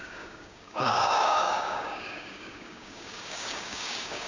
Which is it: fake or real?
fake